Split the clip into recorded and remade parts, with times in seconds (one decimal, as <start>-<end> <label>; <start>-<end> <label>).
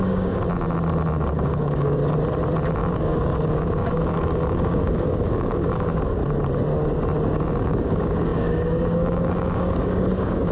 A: 0.0-0.4 remade; 0.4-1.3 recorded; 1.3-2.0 remade; 2.0-2.8 recorded; 2.8-6.2 remade; 6.2-7.6 recorded; 7.6-10.5 remade